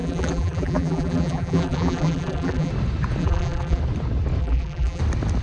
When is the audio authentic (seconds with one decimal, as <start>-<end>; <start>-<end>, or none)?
2.7-3.2; 3.8-4.4; 5.0-5.4